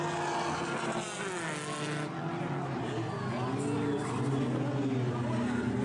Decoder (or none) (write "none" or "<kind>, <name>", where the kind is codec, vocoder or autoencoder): none